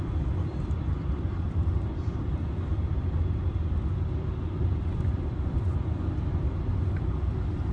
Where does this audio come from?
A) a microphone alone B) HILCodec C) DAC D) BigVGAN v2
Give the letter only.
D